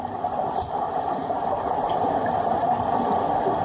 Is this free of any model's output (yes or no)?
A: yes